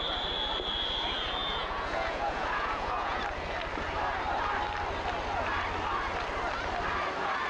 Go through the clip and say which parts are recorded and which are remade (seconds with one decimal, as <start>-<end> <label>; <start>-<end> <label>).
0.0-1.4 recorded; 1.4-3.2 remade; 3.2-7.5 recorded